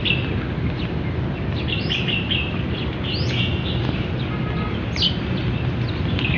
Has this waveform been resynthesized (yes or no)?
no